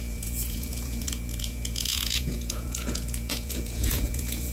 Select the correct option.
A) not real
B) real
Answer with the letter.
A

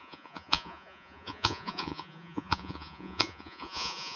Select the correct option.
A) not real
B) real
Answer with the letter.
A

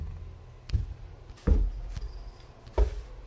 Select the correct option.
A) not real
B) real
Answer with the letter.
B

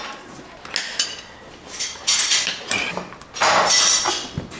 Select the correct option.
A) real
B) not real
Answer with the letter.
A